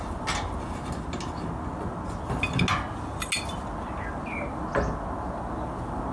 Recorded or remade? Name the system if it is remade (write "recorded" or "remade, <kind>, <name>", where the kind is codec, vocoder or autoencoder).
recorded